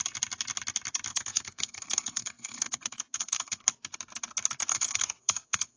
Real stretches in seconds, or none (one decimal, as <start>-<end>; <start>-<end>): 0.0-1.1; 3.6-4.7